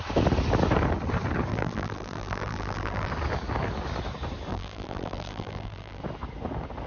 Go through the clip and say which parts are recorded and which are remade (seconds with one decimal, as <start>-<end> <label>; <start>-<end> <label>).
0.0-1.5 recorded; 1.5-3.1 remade; 3.1-4.5 recorded; 4.5-6.0 remade; 6.0-6.9 recorded